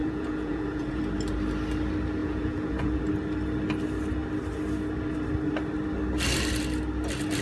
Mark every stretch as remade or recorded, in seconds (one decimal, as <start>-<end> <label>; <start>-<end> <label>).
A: 0.0-1.0 remade; 1.0-2.2 recorded; 2.2-3.0 remade; 3.0-7.4 recorded